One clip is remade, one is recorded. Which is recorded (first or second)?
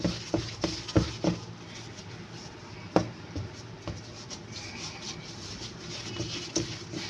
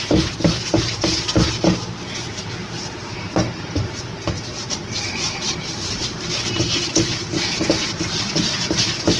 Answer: first